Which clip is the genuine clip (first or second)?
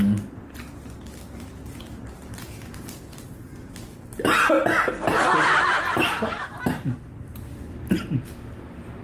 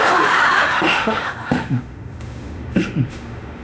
first